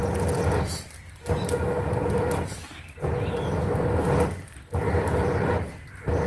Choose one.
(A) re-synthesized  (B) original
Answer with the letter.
B